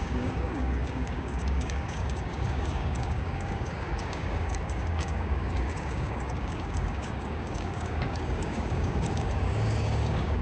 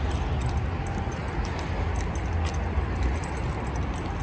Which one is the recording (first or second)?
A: second